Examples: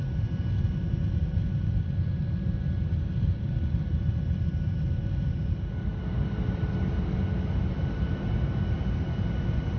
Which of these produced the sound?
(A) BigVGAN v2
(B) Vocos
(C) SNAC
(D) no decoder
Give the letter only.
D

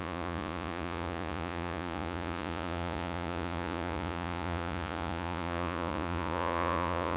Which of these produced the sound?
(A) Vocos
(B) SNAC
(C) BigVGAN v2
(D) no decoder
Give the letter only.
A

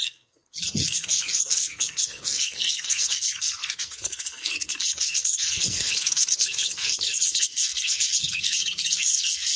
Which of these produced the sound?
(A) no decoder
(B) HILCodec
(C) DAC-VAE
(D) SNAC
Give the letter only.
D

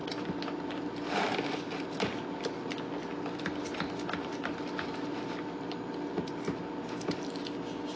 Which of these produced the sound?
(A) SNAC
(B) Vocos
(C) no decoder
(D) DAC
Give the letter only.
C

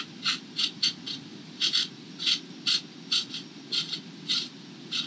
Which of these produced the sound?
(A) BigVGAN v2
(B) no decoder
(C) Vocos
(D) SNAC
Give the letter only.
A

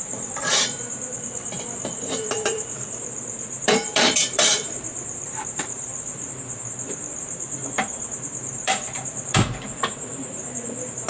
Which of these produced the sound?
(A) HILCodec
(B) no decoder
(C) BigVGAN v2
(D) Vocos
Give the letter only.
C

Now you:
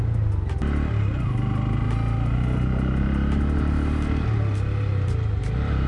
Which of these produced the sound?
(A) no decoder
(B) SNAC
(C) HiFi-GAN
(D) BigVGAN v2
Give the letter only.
A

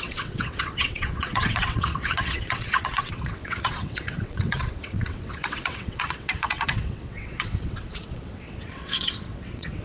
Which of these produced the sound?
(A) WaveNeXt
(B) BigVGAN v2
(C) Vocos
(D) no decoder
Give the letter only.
A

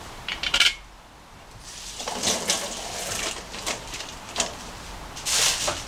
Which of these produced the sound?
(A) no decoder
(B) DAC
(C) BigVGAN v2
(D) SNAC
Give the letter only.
C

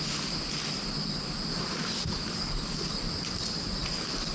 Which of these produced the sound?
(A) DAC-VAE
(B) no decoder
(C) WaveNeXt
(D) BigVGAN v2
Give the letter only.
B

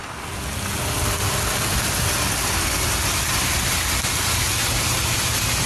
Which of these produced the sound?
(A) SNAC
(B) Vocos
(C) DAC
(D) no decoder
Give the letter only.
D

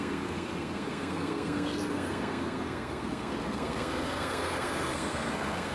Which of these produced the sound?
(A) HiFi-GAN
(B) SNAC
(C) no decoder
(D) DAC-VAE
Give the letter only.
B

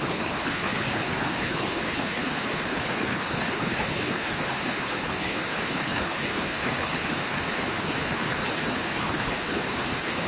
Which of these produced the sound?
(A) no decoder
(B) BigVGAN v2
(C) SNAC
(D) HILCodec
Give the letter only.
D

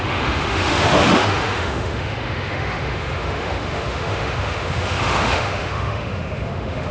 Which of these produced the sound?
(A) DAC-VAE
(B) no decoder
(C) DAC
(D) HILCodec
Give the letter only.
A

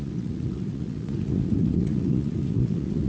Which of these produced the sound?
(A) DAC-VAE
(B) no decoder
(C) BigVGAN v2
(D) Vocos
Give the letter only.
D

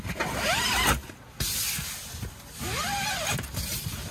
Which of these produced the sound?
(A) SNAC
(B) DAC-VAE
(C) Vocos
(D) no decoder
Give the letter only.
D